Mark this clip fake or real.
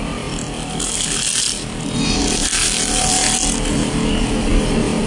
real